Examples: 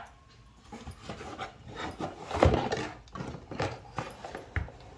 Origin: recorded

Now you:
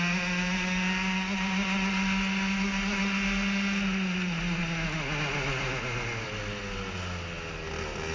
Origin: recorded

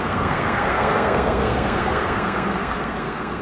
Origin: remade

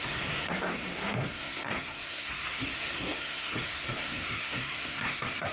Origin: remade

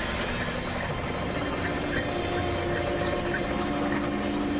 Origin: recorded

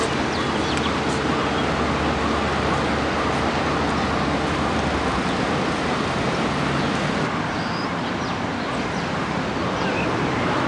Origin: recorded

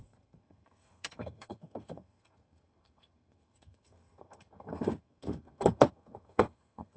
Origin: remade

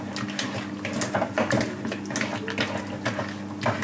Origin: recorded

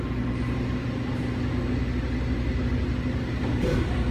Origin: recorded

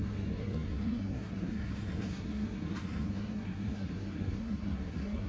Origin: remade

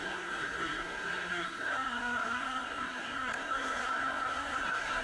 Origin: remade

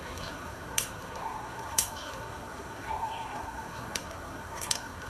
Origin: remade